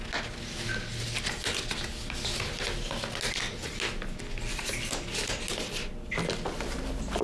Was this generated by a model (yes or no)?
no